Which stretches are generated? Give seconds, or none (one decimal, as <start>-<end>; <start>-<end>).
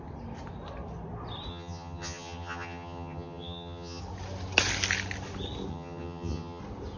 1.5-4.0; 5.7-6.6